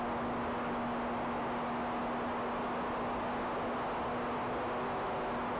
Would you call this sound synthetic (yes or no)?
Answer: no